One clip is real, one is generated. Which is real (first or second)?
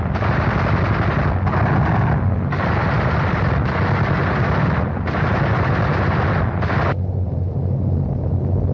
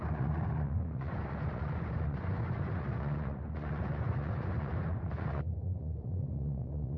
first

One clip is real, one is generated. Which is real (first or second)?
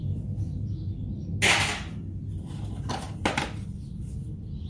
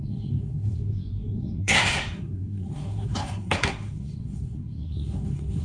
first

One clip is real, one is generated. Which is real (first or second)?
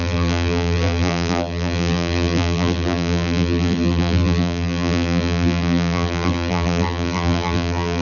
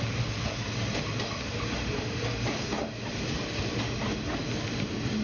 second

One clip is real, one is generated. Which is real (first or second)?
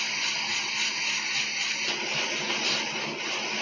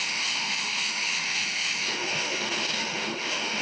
first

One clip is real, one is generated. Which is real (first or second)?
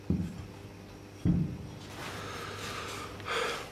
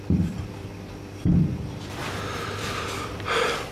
first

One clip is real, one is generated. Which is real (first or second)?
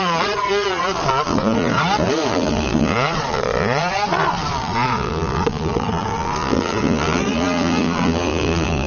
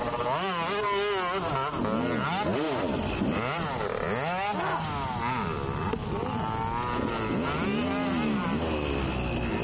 second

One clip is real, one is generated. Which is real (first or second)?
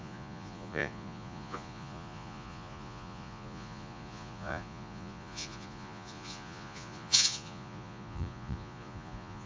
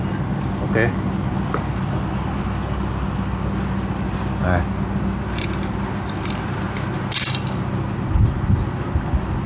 second